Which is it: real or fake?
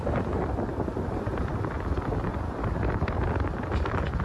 real